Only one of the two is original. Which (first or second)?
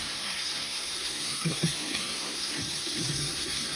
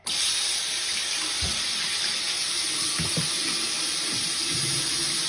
second